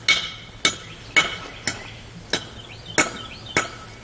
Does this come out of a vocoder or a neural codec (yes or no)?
no